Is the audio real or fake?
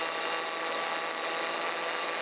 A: real